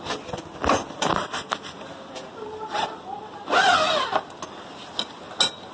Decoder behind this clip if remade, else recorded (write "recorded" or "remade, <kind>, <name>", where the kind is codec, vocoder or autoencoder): recorded